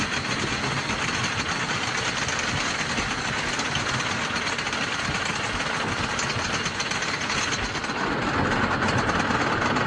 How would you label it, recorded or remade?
recorded